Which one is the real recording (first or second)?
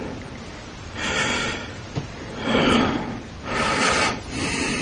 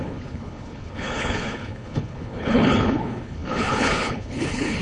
first